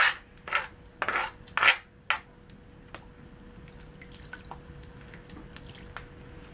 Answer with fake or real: real